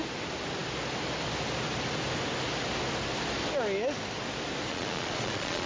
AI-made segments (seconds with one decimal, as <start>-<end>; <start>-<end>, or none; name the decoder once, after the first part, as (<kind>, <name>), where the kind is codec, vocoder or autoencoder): 4.7-5.7 (vocoder, Vocos)